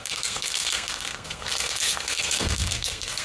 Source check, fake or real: fake